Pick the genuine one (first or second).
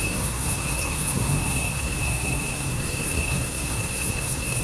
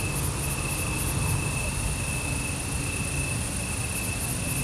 second